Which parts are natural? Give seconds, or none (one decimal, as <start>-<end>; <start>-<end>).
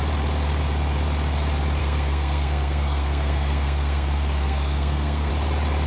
0.0-1.8; 5.3-5.9